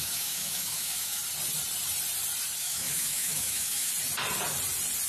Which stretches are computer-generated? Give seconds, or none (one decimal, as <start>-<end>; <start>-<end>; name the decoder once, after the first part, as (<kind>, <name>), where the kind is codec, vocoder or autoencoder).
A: 0.0-1.2 (autoencoder, DAC-VAE); 2.6-3.9